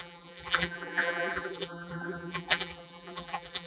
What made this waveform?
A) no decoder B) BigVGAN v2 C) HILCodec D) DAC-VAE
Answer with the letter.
B